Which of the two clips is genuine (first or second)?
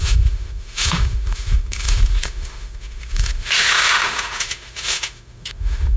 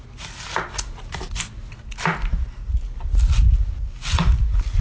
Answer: second